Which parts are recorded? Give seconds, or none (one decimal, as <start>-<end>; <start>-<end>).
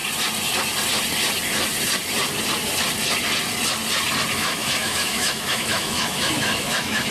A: 0.0-4.3